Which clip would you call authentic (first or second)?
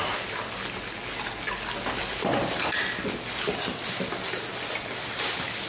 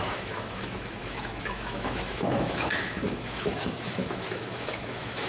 first